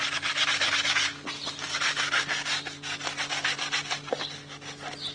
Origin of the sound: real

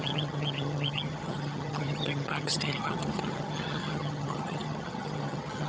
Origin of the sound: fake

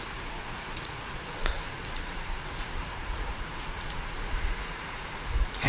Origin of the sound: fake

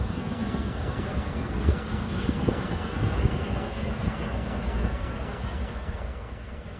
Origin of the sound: fake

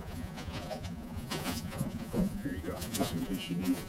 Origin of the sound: fake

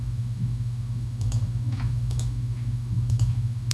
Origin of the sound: fake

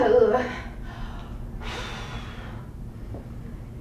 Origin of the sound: real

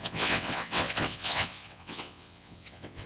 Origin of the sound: fake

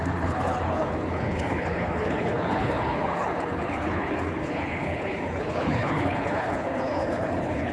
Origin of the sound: fake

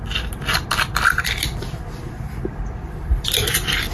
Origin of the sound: fake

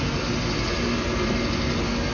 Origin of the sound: real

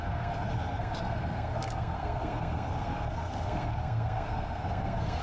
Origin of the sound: fake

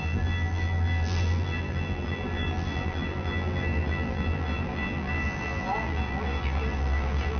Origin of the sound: fake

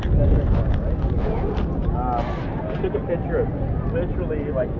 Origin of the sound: real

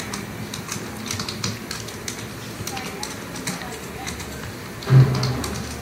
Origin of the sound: real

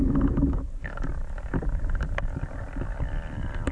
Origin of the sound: real